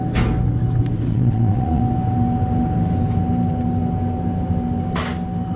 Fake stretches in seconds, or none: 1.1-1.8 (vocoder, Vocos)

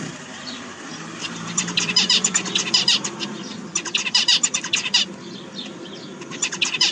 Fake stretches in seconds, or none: 0.0-6.9 (vocoder, BigVGAN v2)

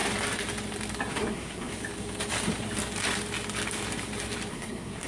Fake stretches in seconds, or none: 1.1-1.7 (codec, SNAC); 4.5-5.1

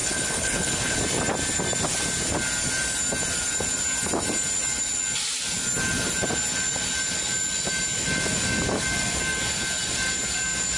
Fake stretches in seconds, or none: 0.0-1.0 (codec, HILCodec)

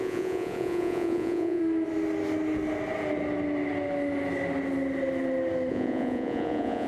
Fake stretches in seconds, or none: 0.0-1.6 (vocoder, Vocos); 5.7-6.9